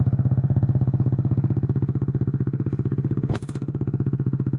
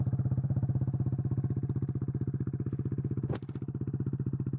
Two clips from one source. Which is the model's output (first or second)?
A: first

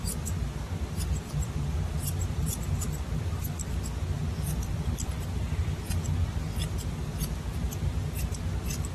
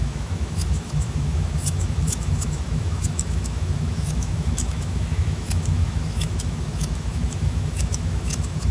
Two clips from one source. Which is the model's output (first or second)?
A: second